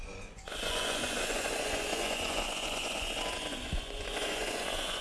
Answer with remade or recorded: remade